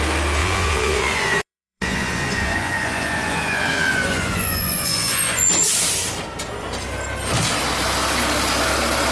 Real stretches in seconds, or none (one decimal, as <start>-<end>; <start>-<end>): 0.0-0.4; 5.5-9.1